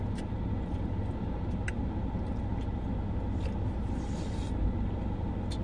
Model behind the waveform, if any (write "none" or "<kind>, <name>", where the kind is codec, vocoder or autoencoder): none